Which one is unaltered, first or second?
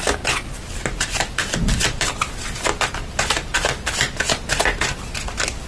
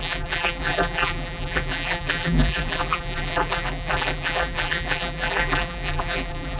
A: first